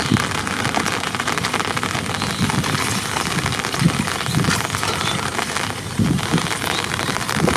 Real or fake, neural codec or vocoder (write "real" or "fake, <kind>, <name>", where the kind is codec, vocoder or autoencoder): real